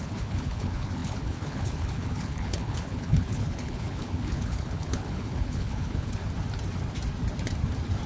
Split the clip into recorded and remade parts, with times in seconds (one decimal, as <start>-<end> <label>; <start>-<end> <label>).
0.0-6.2 remade; 6.2-8.1 recorded